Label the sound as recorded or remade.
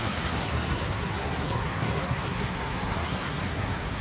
remade